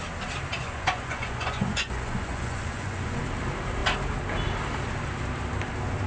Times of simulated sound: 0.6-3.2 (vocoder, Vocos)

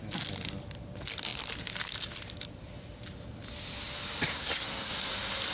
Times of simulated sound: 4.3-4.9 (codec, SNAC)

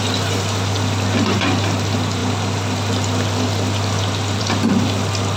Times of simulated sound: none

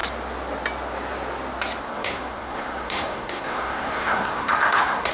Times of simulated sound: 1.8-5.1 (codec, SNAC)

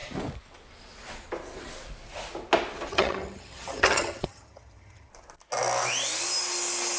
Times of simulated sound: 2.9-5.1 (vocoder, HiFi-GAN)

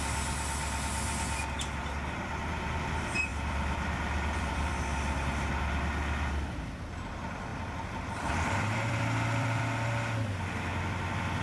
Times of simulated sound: 3.3-4.7 (vocoder, BigVGAN v2); 7.5-9.6

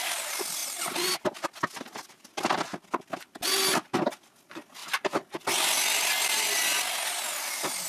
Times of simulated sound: none

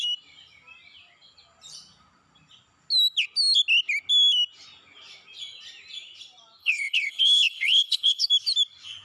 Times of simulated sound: 6.6-8.3 (codec, HILCodec)